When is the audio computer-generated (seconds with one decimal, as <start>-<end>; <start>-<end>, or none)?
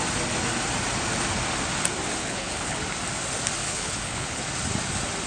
2.2-2.8; 3.6-4.4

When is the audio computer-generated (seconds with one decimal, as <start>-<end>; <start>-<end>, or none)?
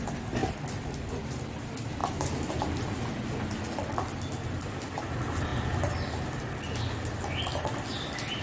2.0-2.7; 5.5-6.2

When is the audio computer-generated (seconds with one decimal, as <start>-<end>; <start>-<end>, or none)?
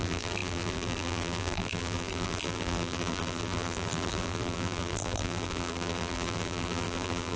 0.0-7.4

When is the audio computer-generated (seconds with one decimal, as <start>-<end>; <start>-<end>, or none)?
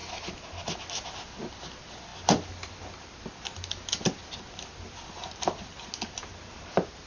none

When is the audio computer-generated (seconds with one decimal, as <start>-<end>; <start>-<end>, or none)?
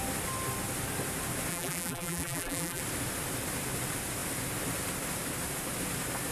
1.5-2.8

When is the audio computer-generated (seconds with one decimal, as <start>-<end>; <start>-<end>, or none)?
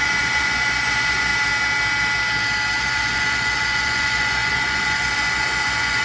0.0-1.3; 2.8-6.0